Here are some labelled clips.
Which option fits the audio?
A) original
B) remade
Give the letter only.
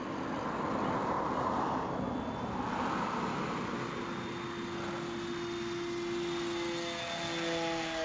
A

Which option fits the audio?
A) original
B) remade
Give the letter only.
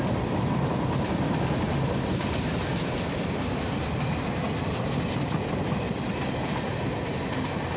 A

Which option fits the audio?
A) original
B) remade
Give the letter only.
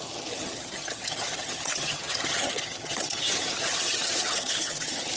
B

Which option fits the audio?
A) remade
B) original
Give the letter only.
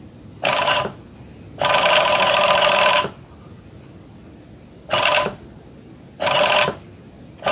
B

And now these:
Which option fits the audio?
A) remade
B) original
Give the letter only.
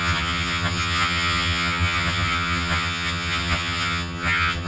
A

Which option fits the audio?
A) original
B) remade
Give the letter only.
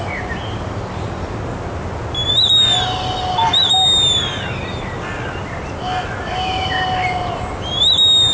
A